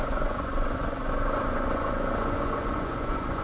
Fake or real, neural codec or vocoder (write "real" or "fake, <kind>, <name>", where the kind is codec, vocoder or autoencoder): fake, vocoder, Vocos